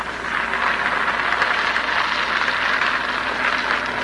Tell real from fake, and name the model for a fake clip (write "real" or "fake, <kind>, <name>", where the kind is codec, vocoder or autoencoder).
real